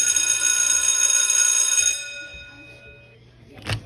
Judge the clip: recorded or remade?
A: recorded